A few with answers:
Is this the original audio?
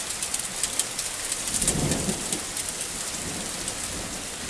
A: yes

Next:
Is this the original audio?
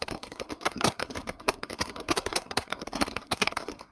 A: no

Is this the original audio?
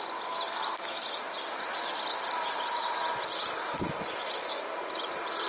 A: yes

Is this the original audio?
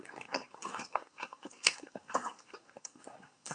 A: no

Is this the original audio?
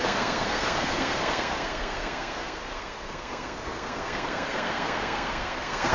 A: no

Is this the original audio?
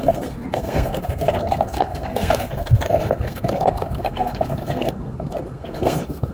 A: no